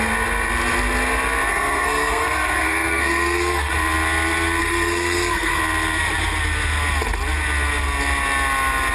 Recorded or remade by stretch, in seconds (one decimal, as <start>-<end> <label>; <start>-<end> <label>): 0.0-1.5 recorded; 1.5-3.7 remade; 3.7-4.6 recorded; 4.6-5.6 remade; 5.6-8.9 recorded

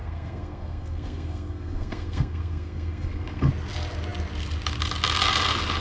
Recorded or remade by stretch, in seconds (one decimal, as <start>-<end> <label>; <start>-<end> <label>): 0.0-3.5 remade; 3.5-5.8 recorded

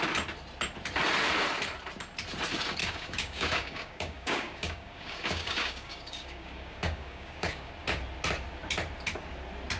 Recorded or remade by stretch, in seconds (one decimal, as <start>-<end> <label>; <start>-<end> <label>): 0.0-2.8 recorded; 2.8-7.7 remade; 7.7-9.8 recorded

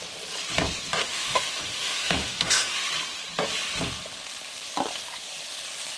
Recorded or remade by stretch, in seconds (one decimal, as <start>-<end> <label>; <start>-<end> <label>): 0.0-1.0 recorded; 1.0-2.9 remade; 2.9-6.0 recorded

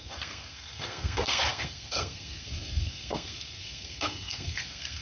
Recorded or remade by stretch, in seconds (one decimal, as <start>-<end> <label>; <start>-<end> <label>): 0.0-5.0 remade